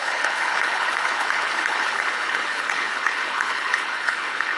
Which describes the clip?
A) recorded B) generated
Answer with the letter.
B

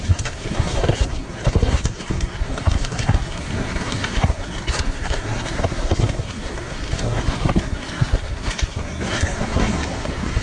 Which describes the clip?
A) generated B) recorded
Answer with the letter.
A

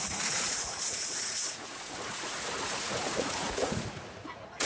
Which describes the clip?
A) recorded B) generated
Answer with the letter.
B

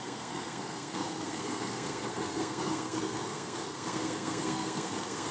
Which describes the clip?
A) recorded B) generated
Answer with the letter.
B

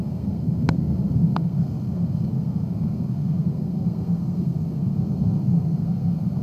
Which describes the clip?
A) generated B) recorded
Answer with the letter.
A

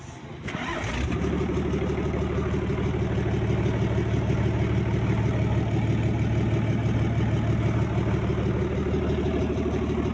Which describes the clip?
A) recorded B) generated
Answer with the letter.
A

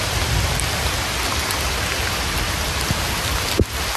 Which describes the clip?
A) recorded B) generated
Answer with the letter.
A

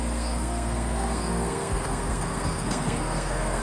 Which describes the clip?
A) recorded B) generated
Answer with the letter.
B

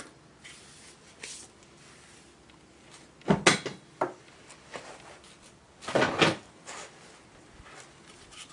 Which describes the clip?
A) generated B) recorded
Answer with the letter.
B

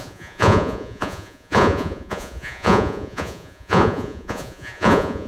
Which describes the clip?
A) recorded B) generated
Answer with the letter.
B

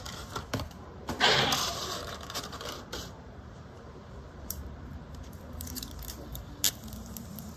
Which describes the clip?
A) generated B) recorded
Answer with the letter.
A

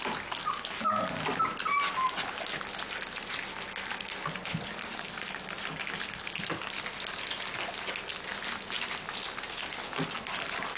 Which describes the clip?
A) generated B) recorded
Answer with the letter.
B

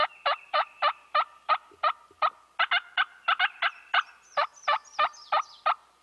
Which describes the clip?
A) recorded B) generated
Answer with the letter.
A